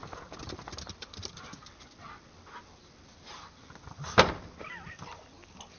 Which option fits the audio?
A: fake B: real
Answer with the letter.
B